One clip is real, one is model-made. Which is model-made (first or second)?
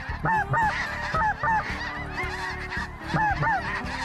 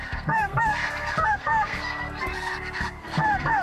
second